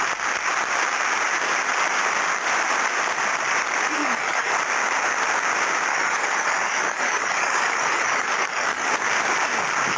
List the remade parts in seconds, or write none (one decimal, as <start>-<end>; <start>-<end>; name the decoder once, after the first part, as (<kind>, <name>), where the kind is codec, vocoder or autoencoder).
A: 4.0-4.5 (codec, DAC); 5.9-8.9